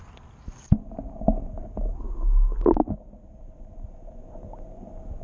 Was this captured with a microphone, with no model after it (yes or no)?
yes